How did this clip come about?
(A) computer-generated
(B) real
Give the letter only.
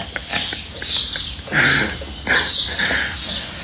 B